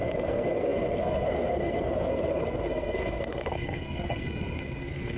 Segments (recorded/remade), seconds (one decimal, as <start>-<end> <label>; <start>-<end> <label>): 0.0-5.2 remade